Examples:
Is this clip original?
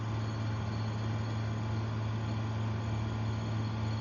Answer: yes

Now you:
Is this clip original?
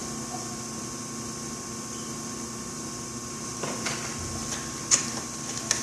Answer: yes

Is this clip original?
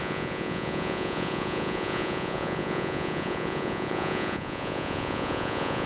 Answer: no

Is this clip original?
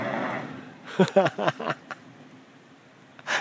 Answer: yes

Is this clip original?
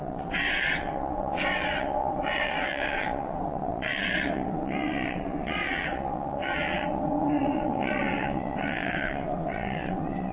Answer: no